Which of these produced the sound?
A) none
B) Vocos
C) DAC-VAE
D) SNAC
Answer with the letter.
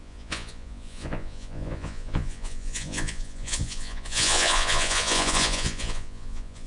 B